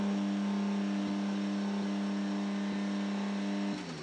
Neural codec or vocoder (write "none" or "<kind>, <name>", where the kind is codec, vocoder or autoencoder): none